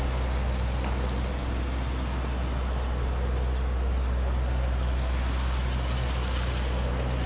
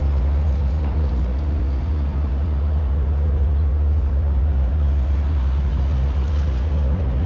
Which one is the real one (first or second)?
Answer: first